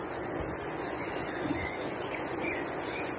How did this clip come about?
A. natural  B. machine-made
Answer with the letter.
B